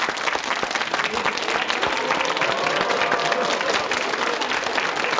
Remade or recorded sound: recorded